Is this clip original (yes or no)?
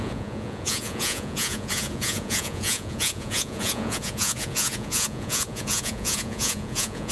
no